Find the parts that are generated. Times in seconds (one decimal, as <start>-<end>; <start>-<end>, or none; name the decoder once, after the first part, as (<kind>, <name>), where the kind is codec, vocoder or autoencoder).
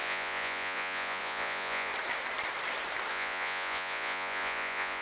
0.0-1.9 (vocoder, Vocos); 3.1-5.0